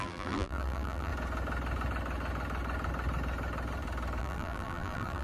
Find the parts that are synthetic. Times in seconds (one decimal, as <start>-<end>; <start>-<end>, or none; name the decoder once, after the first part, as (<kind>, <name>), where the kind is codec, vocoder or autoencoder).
0.0-1.1 (vocoder, BigVGAN v2); 4.2-5.2